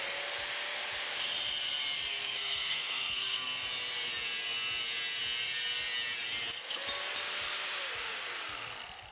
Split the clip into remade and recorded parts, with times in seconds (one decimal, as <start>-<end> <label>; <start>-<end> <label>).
0.0-2.2 recorded; 2.2-3.4 remade; 3.4-9.1 recorded